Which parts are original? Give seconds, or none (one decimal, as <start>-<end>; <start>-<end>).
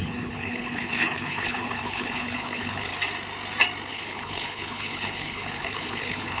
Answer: 2.9-3.9